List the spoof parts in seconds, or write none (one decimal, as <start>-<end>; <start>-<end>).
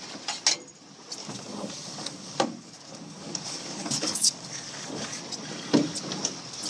1.2-5.2